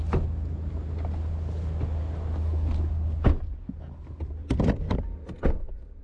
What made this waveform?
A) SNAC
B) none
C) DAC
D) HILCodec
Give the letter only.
B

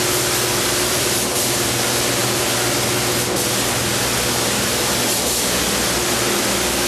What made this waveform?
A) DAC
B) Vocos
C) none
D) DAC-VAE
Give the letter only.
C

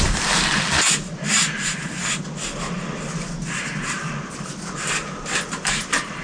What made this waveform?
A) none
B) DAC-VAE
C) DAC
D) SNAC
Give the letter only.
A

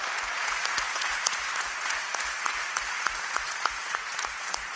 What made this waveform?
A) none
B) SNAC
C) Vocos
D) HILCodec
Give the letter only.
C